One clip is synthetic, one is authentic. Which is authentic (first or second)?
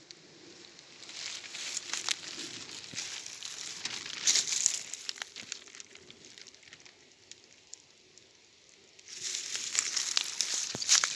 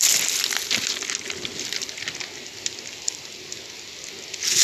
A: second